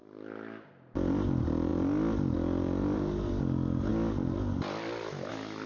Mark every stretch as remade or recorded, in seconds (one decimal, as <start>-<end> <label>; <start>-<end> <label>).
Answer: 0.0-5.7 recorded